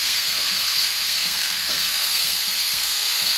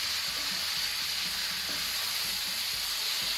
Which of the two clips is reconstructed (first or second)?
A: first